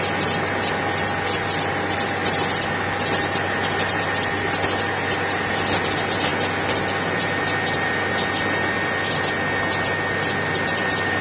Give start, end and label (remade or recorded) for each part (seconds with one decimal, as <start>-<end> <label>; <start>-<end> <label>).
0.0-11.2 recorded